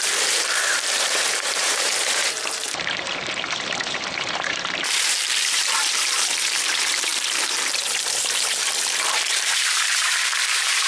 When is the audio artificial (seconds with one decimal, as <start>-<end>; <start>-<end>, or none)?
0.0-10.9